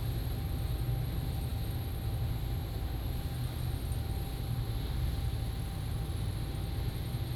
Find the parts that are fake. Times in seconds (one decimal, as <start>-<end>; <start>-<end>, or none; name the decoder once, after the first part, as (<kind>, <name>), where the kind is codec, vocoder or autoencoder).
none